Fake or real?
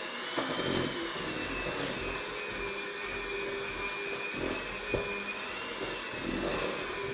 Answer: real